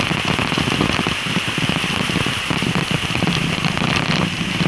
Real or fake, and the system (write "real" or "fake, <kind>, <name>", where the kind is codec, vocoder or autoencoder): real